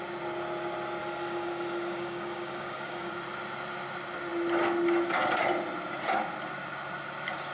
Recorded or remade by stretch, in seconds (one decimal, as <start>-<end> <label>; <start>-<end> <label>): 0.0-1.0 recorded; 1.0-3.1 remade; 3.1-7.5 recorded